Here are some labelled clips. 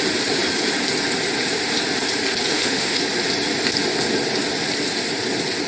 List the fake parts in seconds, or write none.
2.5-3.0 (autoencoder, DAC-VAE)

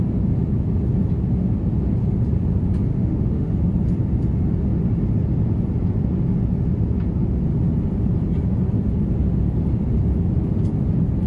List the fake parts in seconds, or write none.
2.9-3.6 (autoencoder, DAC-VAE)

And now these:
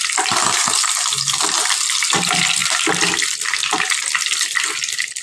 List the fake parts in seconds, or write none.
none

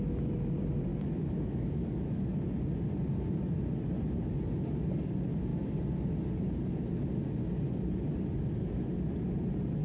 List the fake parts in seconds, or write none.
0.9-2.0 (autoencoder, DAC-VAE)

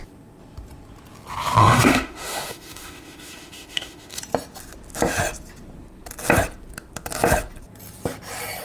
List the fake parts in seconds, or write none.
1.6-4.2 (autoencoder, DAC-VAE)